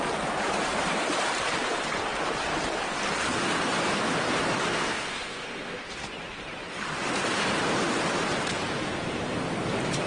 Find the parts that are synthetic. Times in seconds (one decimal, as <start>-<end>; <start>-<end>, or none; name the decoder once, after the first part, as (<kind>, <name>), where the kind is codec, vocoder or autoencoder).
4.7-5.9 (codec, SNAC)